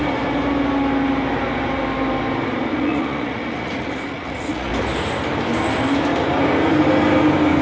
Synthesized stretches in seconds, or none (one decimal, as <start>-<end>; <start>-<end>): 2.7-4.7